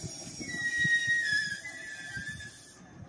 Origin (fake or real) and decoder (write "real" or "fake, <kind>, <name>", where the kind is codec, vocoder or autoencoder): real